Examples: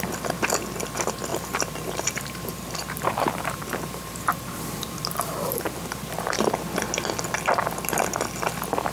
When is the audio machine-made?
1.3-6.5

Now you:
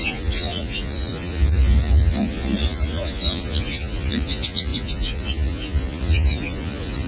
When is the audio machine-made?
0.0-7.1

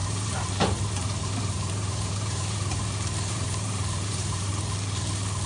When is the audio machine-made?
0.0-4.5

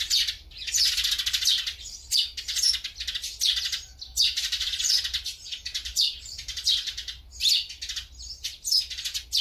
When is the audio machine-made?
4.1-7.2